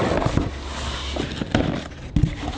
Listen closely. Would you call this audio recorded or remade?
recorded